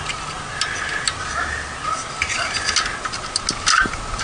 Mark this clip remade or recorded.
recorded